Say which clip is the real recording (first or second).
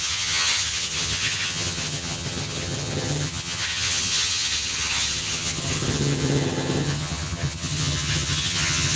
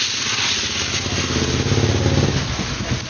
second